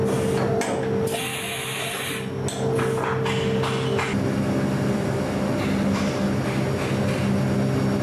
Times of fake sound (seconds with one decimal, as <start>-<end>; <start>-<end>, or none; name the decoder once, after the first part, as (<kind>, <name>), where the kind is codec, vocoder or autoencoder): 1.3-1.8 (autoencoder, DAC-VAE)